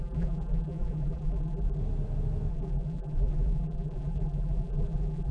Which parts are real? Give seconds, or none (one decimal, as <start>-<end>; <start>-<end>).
1.8-2.5